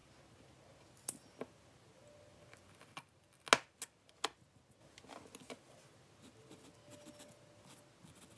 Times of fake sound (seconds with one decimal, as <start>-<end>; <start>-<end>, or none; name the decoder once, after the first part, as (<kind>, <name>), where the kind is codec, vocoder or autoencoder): none